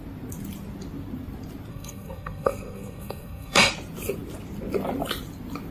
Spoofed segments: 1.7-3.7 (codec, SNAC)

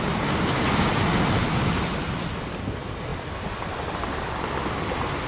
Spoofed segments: none

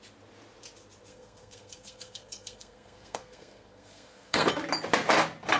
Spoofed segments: 1.1-4.5 (codec, SNAC)

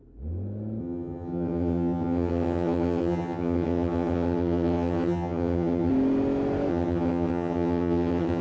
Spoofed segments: 0.8-5.9 (vocoder, HiFi-GAN); 6.7-8.4

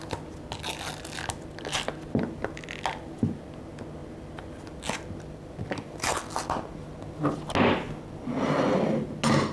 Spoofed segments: none

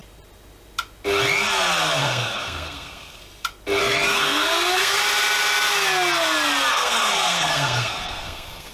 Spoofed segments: 2.0-3.2 (codec, SNAC); 3.8-5.0; 6.7-8.7

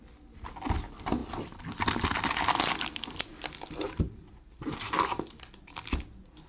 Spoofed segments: none